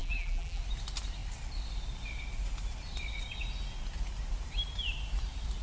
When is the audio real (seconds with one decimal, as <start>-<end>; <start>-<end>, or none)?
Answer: 0.6-5.6